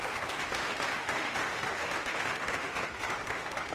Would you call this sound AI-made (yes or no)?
yes